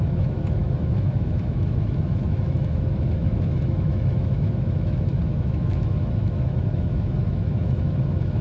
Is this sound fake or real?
fake